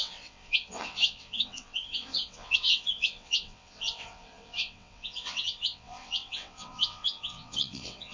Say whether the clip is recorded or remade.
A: remade